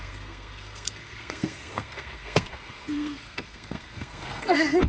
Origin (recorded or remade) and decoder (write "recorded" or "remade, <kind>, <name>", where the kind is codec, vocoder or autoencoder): remade, codec, SNAC